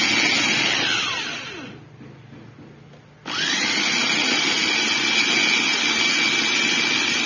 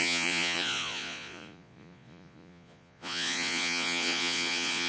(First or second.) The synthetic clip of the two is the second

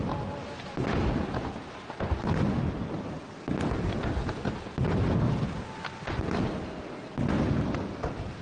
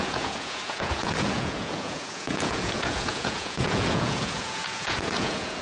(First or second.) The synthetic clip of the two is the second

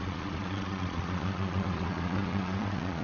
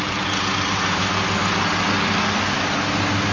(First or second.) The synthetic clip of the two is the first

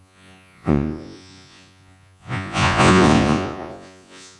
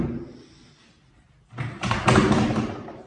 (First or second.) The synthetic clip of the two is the first